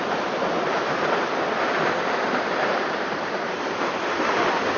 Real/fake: fake